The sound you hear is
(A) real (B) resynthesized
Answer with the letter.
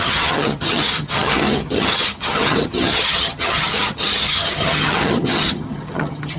B